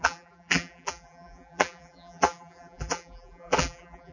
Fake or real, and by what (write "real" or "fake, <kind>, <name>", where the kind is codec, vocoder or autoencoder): fake, vocoder, BigVGAN v2